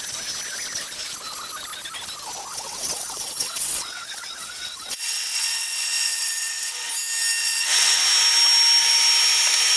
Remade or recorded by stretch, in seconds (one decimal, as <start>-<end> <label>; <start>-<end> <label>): 0.0-2.5 recorded; 2.5-6.9 remade; 6.9-7.4 recorded; 7.4-8.0 remade; 8.0-9.8 recorded